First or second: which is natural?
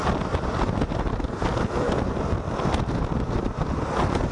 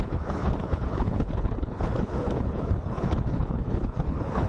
first